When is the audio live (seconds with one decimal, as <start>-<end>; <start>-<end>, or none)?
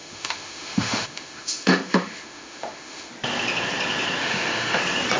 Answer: 3.1-4.2; 4.8-5.2